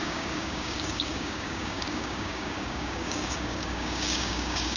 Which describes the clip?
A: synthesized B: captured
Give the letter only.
A